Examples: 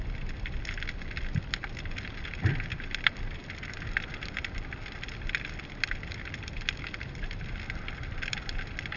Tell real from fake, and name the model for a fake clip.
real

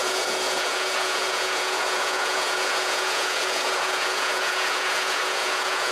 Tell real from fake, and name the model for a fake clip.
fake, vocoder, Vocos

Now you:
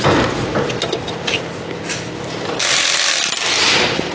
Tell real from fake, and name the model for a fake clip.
real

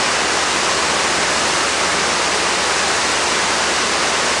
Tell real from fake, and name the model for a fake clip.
real